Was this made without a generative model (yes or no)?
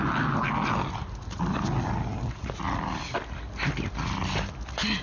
yes